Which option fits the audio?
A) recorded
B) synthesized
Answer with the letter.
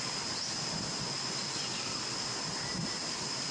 A